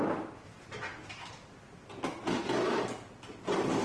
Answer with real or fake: real